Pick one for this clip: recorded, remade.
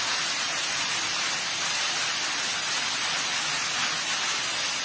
recorded